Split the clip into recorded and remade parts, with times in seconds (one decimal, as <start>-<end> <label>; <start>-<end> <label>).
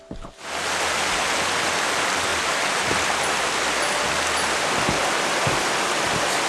0.0-6.5 recorded